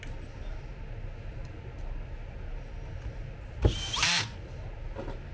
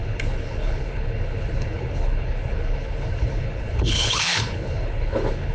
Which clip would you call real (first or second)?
first